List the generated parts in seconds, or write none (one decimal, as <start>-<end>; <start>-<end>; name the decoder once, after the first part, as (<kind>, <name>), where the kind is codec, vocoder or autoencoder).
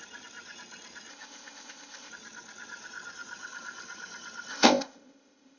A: 1.1-2.1 (codec, ZipCodec); 4.5-5.6